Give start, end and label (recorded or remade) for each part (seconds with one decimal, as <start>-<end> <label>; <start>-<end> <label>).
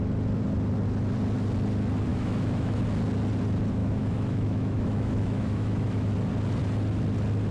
0.0-2.1 recorded; 2.1-2.8 remade; 2.8-3.8 recorded; 3.8-6.1 remade; 6.1-7.5 recorded